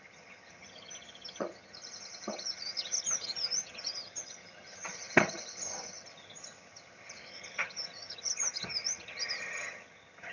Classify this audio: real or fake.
fake